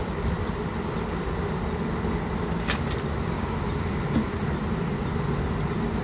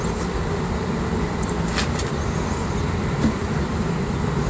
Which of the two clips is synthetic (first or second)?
second